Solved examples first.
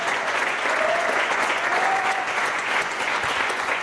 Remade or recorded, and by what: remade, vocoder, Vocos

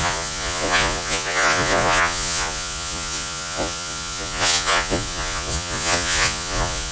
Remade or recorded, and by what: remade, vocoder, Vocos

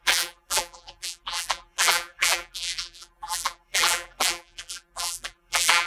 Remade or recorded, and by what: remade, vocoder, BigVGAN v2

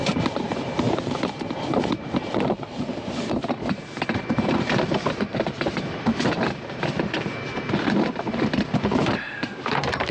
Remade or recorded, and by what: remade, vocoder, BigVGAN v2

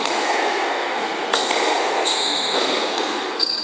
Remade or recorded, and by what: remade, codec, SNAC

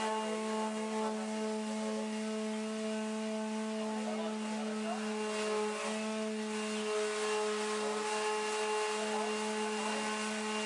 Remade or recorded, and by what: recorded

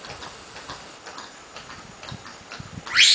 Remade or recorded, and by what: recorded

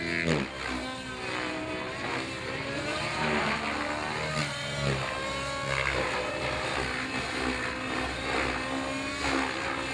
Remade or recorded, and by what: recorded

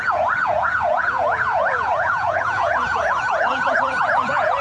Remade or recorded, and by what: remade, vocoder, Vocos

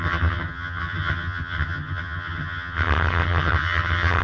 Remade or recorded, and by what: remade, vocoder, HiFi-GAN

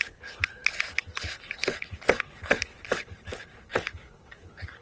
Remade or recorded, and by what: remade, codec, HILCodec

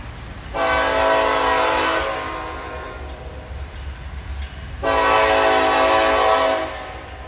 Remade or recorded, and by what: recorded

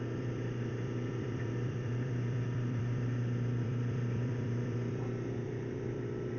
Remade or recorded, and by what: remade, vocoder, BigVGAN v2